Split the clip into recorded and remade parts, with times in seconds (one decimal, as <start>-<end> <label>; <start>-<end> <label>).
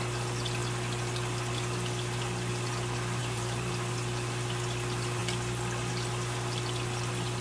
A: 0.0-3.2 recorded; 3.2-3.7 remade; 3.7-7.4 recorded